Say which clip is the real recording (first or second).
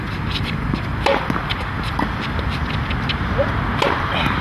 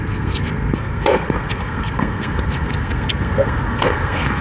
first